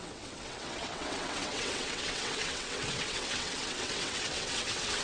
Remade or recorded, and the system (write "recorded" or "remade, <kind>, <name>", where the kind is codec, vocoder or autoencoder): remade, vocoder, WaveNeXt